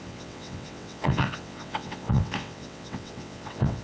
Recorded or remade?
remade